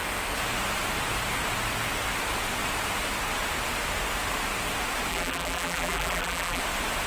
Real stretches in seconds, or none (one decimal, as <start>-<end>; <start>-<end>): 0.0-5.1; 6.6-7.1